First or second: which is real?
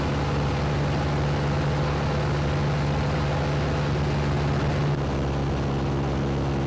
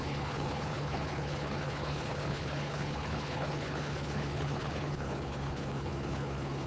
first